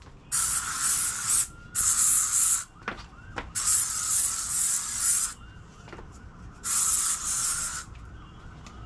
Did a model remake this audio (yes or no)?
no